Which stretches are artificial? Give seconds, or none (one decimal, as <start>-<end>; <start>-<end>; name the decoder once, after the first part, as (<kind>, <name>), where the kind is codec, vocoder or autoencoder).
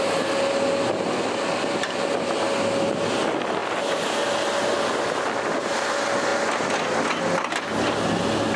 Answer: none